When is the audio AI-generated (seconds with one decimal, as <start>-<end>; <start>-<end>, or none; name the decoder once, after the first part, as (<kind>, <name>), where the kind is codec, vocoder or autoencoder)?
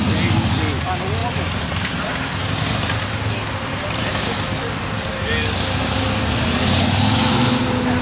none